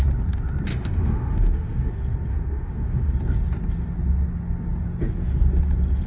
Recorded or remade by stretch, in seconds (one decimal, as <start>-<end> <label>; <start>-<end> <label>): 0.0-0.7 recorded; 0.7-1.9 remade; 1.9-2.3 recorded; 2.3-3.1 remade; 3.1-6.1 recorded